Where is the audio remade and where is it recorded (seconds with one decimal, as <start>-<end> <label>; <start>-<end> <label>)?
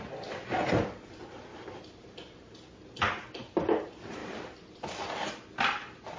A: 0.0-4.2 recorded; 4.2-4.7 remade; 4.7-6.2 recorded